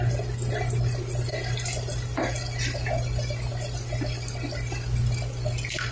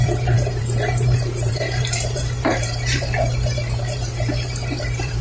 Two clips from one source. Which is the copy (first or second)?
second